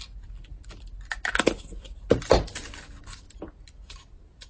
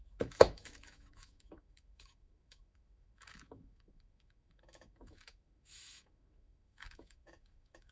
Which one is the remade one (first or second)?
second